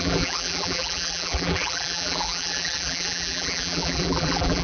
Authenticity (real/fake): fake